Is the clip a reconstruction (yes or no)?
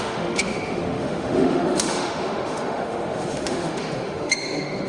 yes